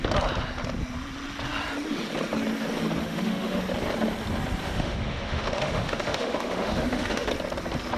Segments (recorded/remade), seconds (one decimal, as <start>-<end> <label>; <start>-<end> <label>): 0.0-3.0 recorded; 3.0-3.6 remade; 3.6-4.6 recorded; 4.6-7.3 remade; 7.3-8.0 recorded